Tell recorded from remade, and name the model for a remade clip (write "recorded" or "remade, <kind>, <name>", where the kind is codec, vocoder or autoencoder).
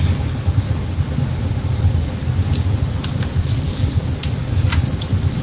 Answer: recorded